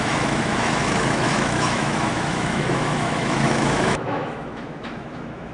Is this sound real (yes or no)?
no